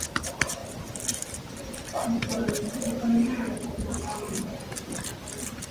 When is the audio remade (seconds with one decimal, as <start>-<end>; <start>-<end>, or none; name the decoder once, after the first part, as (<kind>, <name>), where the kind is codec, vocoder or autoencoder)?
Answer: 0.0-0.6 (vocoder, BigVGAN v2); 2.6-3.8; 5.2-5.7